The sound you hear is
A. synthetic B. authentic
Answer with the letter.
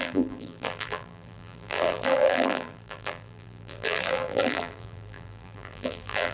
A